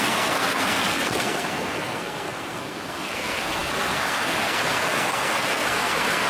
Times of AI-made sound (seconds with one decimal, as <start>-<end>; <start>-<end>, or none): 0.0-6.3